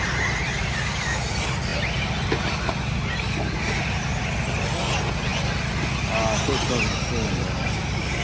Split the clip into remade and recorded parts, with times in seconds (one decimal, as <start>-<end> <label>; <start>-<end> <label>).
0.0-8.2 recorded